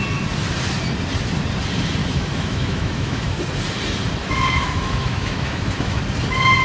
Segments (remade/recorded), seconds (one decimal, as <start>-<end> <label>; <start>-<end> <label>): 0.0-2.0 recorded; 2.0-3.4 remade; 3.4-4.2 recorded; 4.2-6.0 remade; 6.0-6.6 recorded